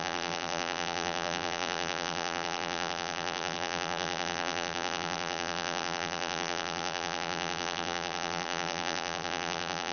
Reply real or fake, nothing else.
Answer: fake